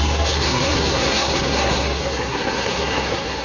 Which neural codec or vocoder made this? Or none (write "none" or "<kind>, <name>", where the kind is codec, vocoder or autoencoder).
codec, SNAC